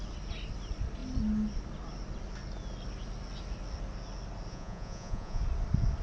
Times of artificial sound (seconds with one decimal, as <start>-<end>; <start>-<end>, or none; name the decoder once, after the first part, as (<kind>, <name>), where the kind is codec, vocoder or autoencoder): 4.5-5.4 (vocoder, Vocos)